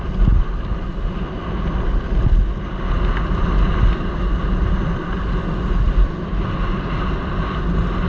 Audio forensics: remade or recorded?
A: recorded